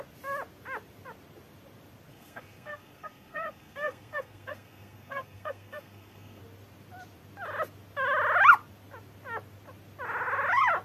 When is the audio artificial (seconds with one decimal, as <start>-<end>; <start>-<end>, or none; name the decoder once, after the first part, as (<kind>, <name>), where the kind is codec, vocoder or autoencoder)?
2.1-6.4 (codec, SNAC)